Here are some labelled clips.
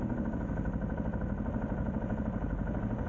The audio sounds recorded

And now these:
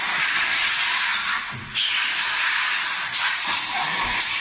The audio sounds recorded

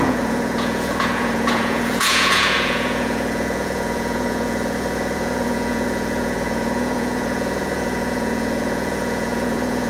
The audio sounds remade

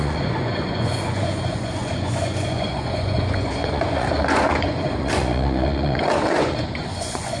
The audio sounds remade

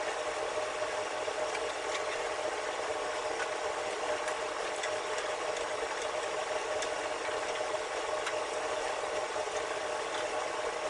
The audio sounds recorded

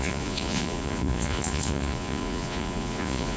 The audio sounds remade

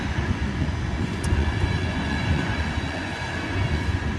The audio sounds remade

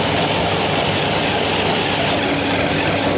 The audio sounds recorded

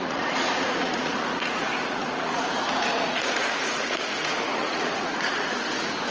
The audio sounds remade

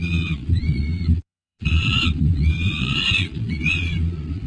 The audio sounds remade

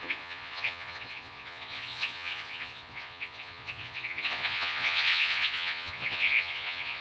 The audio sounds remade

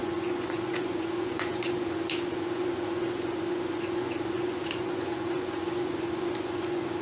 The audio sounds remade